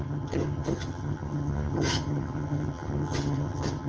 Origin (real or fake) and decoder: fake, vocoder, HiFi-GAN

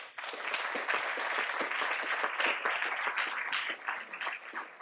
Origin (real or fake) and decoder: real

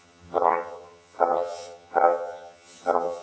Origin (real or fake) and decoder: fake, vocoder, HiFi-GAN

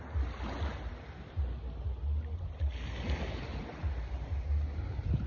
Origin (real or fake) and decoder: real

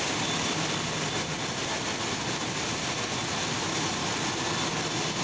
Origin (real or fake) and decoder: real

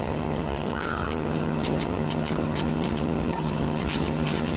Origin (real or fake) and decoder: fake, vocoder, HiFi-GAN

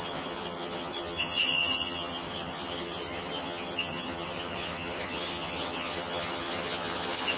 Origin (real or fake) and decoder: fake, vocoder, HiFi-GAN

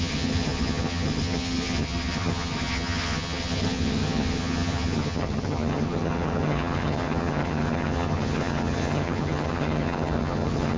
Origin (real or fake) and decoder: fake, vocoder, HiFi-GAN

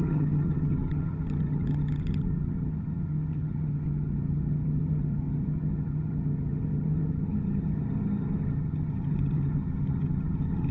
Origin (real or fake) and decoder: fake, vocoder, HiFi-GAN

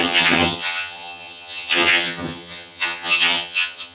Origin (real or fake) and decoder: fake, vocoder, HiFi-GAN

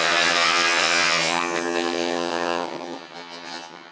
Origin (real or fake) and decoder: fake, vocoder, HiFi-GAN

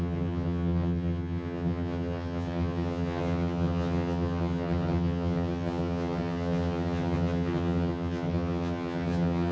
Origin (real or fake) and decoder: fake, vocoder, HiFi-GAN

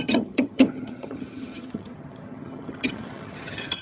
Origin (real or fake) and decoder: fake, vocoder, HiFi-GAN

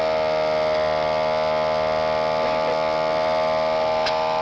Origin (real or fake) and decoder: real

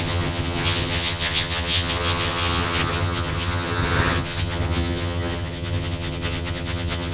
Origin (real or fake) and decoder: fake, vocoder, HiFi-GAN